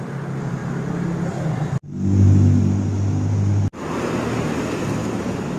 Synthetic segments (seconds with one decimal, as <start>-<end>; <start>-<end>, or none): 5.0-5.6